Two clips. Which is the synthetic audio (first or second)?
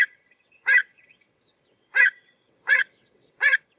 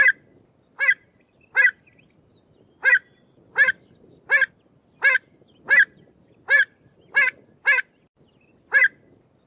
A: first